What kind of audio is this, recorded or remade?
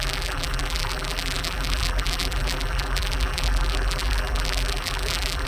remade